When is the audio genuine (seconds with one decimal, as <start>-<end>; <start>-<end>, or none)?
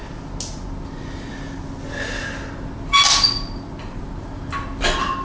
0.0-5.2